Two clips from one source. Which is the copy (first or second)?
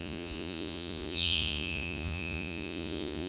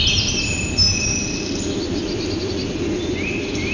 first